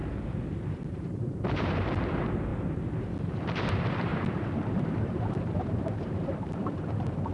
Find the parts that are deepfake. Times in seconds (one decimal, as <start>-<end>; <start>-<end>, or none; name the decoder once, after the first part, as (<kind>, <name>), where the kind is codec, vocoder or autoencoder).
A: 0.9-2.5 (vocoder, BigVGAN v2); 3.2-7.3